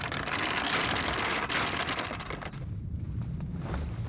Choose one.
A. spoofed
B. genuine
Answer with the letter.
B